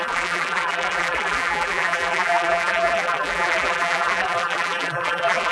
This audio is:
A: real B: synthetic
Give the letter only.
B